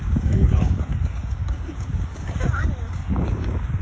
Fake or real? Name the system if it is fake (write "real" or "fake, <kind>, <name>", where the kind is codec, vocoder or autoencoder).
fake, codec, DAC